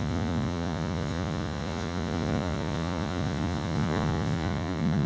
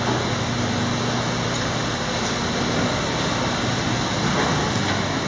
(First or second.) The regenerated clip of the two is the first